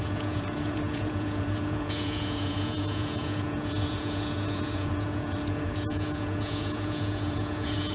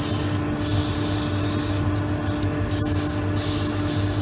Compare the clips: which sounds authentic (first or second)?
second